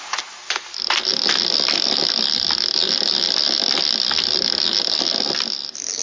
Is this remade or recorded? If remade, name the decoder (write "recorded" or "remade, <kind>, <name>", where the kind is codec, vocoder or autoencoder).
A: recorded